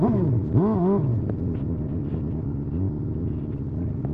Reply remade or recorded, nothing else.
recorded